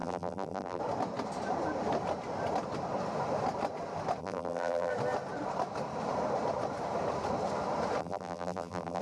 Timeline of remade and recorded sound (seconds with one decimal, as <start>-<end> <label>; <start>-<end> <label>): 0.0-0.8 remade; 0.8-4.2 recorded; 4.2-4.9 remade; 4.9-8.0 recorded; 8.0-9.0 remade

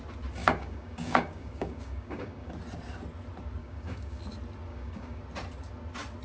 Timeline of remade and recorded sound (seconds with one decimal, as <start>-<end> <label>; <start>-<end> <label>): 0.0-0.4 recorded; 0.4-2.5 remade; 2.5-3.6 recorded; 3.6-4.2 remade; 4.2-4.7 recorded; 4.7-5.2 remade; 5.2-6.2 recorded

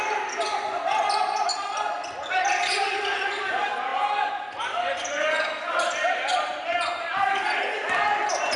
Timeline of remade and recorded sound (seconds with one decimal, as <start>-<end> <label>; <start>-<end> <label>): 0.0-8.6 recorded

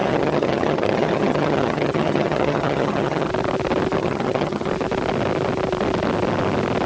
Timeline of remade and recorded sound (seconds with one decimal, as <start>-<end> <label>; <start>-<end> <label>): 0.0-3.3 remade; 3.3-4.0 recorded; 4.0-4.7 remade; 4.7-6.9 recorded